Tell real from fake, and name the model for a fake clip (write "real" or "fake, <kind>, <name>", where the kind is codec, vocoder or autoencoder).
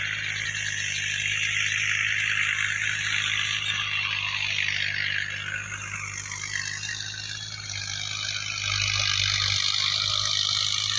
real